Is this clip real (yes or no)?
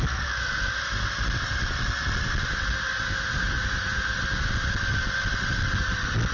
yes